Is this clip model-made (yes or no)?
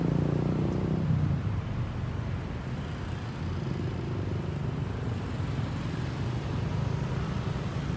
no